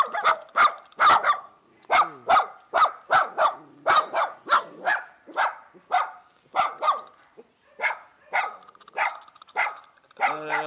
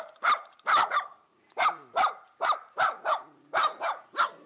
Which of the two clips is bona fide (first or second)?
first